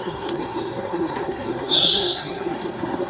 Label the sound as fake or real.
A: fake